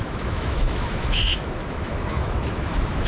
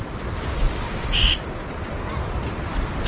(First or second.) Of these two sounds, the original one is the second